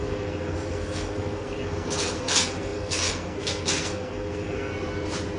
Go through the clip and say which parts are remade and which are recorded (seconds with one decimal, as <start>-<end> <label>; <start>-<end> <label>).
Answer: 0.0-4.7 remade; 4.7-5.4 recorded